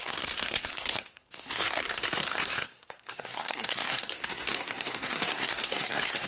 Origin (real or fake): fake